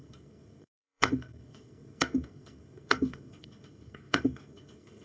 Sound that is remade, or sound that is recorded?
remade